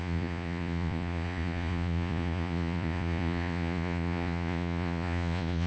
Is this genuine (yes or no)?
no